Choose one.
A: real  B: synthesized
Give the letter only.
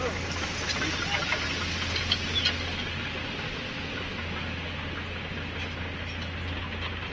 A